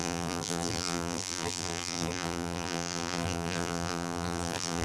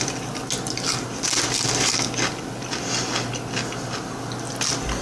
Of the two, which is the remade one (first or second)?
first